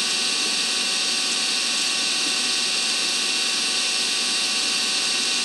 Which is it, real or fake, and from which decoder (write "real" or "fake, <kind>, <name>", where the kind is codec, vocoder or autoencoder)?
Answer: fake, vocoder, BigVGAN v2